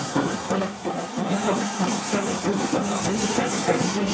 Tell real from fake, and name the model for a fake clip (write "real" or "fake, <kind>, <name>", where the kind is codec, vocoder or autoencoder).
fake, codec, SNAC